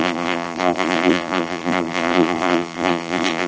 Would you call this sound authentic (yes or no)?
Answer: no